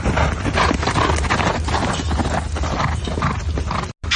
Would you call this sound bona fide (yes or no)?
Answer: yes